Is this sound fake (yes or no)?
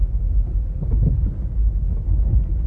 no